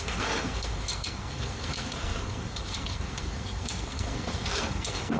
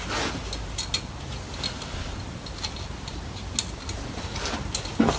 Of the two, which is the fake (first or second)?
first